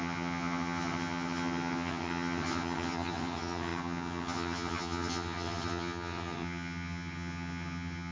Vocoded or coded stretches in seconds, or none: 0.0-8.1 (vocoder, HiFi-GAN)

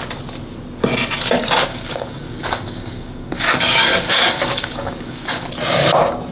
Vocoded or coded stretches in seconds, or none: 1.7-5.5 (codec, DAC)

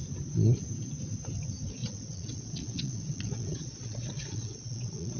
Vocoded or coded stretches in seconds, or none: 1.8-5.2 (vocoder, Vocos)

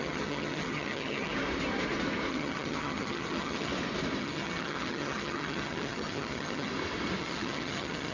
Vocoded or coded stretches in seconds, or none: 0.0-1.3 (vocoder, HiFi-GAN); 2.3-3.7; 4.2-6.7; 7.2-8.1

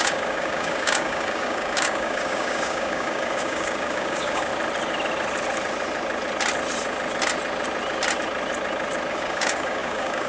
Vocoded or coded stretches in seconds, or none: 0.0-4.5 (codec, DAC); 9.1-10.3